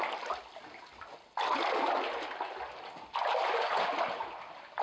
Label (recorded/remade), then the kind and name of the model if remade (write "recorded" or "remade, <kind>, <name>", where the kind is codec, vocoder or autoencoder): recorded